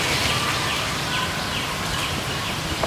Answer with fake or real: real